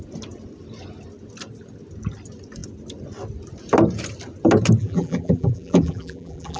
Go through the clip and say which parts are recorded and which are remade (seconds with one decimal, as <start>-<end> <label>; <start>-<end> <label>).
0.0-4.8 recorded; 4.8-6.6 remade